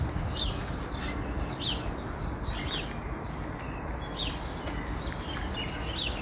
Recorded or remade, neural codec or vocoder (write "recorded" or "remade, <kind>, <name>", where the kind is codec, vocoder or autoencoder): recorded